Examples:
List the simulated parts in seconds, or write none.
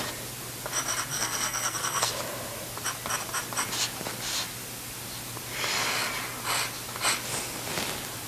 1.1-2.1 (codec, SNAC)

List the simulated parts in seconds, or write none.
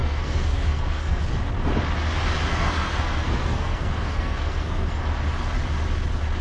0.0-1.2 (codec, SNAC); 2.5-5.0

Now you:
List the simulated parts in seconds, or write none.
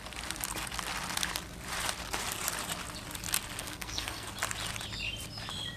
3.6-4.3 (codec, SNAC)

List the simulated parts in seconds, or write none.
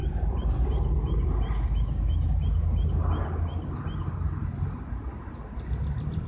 none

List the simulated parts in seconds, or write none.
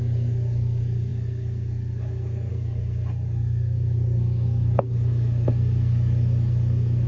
0.0-7.1 (codec, SNAC)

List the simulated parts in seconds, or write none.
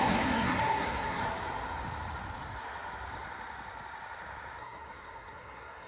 0.0-1.2 (codec, SNAC); 4.6-5.9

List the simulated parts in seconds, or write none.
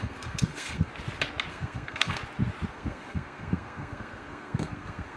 0.0-0.9 (codec, SNAC); 1.5-2.2; 2.7-5.2